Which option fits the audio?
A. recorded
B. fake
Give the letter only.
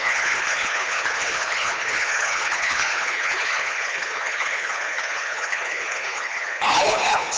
B